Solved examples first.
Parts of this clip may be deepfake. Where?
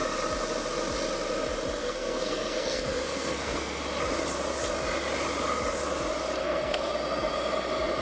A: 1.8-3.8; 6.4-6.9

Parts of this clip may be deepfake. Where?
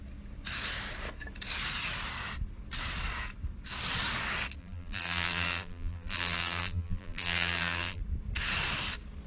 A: 4.6-8.0